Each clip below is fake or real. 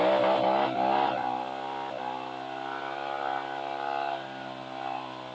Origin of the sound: real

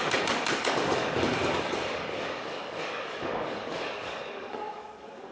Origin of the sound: fake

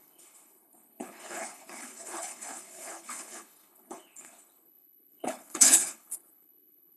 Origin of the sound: fake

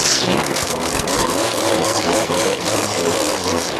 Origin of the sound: fake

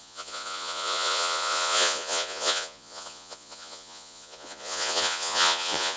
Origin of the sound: fake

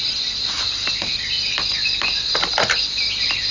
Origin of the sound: real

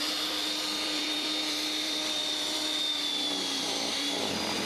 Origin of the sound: fake